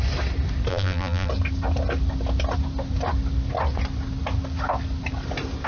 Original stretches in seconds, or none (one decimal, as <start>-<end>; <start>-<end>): 0.0-0.7; 1.3-5.7